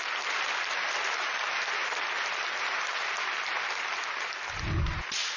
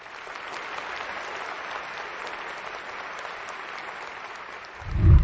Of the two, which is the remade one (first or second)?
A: second